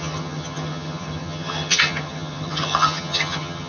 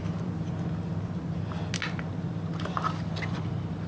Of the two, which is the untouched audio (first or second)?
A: second